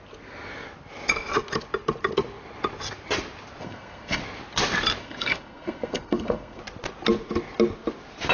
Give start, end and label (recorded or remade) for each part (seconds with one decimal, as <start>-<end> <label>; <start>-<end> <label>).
0.0-3.6 recorded; 3.6-4.2 remade; 4.2-5.0 recorded; 5.0-6.6 remade; 6.6-8.3 recorded